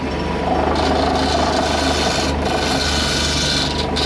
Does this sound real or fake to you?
real